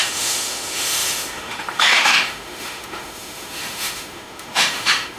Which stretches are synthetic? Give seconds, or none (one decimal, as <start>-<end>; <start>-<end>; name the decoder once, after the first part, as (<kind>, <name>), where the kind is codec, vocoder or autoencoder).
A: 0.0-5.2 (autoencoder, DAC-VAE)